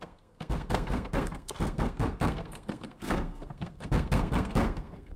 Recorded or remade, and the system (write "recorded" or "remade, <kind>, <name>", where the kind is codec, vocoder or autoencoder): remade, codec, SNAC